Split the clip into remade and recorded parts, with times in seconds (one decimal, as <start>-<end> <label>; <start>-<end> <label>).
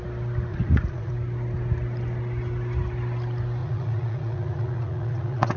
0.0-0.5 recorded; 0.5-1.1 remade; 1.1-3.6 recorded; 3.6-5.6 remade